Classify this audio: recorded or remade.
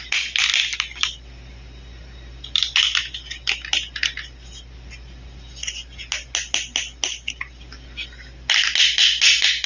recorded